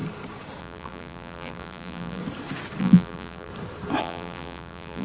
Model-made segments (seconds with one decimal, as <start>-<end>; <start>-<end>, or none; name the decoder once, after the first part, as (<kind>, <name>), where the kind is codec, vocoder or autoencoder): 0.6-2.2 (vocoder, BigVGAN v2); 2.8-3.5; 4.0-5.0